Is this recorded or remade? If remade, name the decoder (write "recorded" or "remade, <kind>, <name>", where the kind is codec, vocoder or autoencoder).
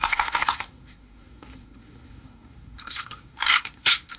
remade, codec, SNAC